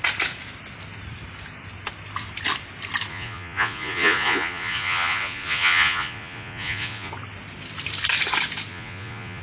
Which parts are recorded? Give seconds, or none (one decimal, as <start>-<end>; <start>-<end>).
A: 0.0-3.1; 7.1-8.7